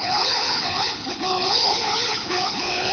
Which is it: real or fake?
fake